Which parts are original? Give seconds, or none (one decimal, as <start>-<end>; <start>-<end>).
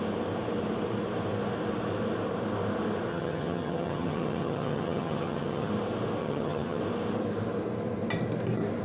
0.0-3.1; 5.7-6.2; 6.8-8.8